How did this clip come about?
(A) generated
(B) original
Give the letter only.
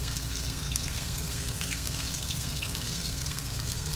A